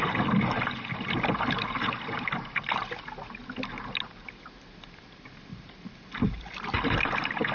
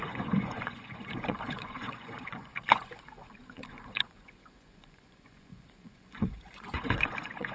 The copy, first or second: second